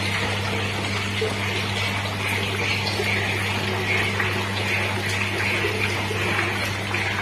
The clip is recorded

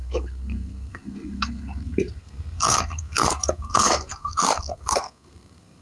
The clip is remade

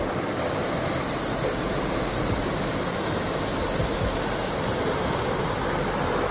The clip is recorded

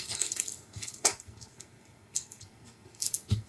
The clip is remade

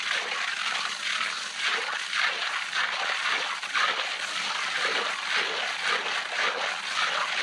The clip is recorded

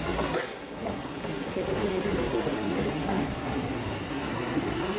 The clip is remade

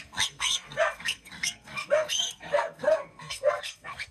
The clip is remade